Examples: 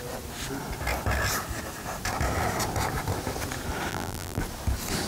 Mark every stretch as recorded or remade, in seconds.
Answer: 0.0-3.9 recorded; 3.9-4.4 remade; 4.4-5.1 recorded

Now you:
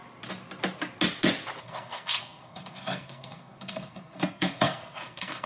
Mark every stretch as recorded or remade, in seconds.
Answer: 0.0-1.6 recorded; 1.6-5.5 remade

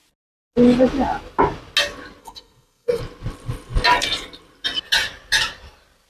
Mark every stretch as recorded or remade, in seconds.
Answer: 0.0-2.2 recorded; 2.2-3.0 remade; 3.0-6.1 recorded

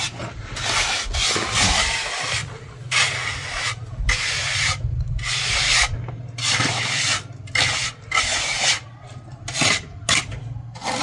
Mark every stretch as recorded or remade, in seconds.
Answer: 0.0-11.0 recorded